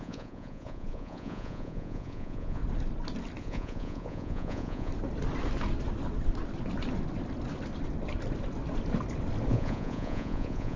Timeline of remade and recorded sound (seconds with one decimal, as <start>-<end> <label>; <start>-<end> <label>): 0.0-2.6 remade; 2.6-3.4 recorded; 3.4-4.9 remade; 4.9-9.5 recorded; 9.5-10.8 remade